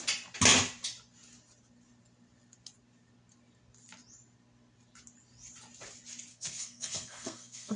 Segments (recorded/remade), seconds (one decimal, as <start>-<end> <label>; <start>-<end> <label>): 0.0-6.3 recorded; 6.3-7.8 remade